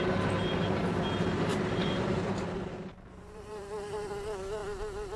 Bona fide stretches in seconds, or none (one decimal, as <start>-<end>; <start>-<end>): 0.0-1.5; 4.1-5.2